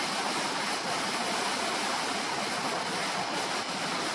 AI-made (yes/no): no